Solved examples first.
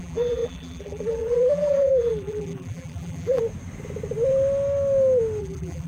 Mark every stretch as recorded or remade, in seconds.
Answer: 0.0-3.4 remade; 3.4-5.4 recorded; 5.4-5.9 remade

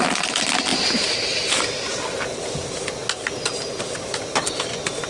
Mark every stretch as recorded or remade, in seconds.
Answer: 0.0-5.1 recorded

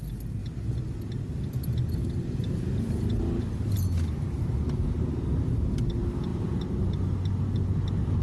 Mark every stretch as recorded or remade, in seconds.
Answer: 0.0-8.2 recorded